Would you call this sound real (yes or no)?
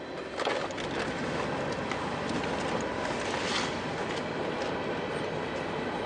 yes